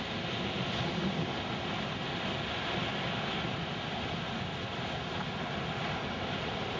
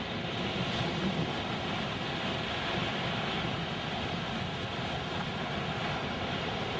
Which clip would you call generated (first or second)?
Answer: second